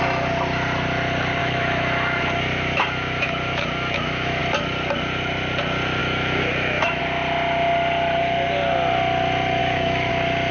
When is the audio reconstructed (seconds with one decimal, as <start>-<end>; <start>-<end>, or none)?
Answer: 1.4-4.4; 6.0-7.0; 9.6-10.1